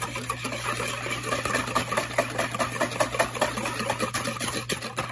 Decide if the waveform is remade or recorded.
recorded